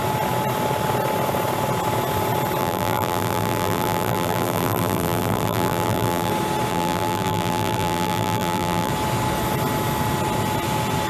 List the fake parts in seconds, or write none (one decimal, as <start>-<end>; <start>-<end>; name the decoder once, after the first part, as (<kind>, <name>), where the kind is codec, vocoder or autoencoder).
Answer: 2.6-6.3 (vocoder, BigVGAN v2); 6.7-8.9